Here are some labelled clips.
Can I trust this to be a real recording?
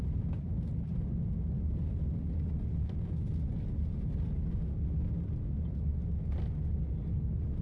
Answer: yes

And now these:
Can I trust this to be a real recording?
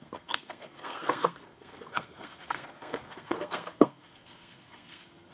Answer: no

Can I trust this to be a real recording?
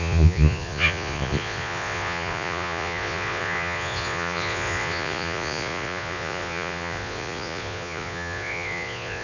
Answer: no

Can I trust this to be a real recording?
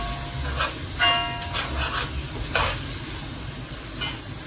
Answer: yes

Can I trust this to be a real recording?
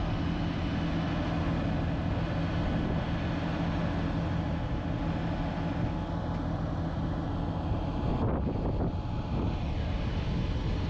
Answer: yes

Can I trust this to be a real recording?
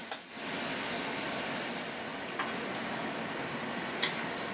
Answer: yes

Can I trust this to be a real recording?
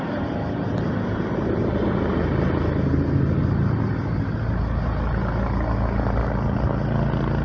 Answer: yes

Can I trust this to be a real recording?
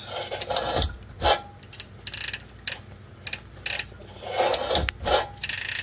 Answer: yes